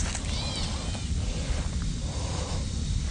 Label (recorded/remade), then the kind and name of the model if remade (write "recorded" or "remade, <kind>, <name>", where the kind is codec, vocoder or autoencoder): recorded